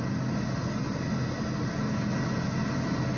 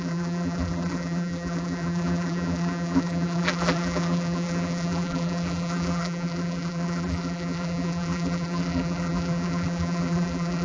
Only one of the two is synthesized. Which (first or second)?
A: second